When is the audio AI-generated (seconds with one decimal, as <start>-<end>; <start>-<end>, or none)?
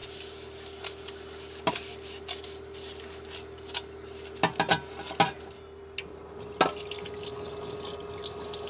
none